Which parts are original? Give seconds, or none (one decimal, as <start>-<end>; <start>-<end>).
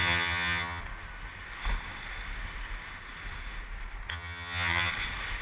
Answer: 0.8-4.1; 4.9-5.4